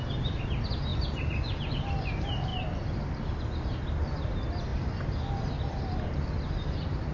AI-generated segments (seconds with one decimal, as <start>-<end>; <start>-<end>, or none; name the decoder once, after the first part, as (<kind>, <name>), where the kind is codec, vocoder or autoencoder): none